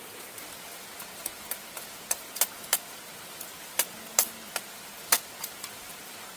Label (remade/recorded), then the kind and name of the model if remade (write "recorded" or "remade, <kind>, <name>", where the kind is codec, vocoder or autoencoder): recorded